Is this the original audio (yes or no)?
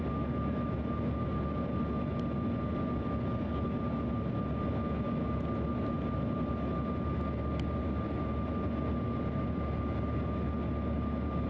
yes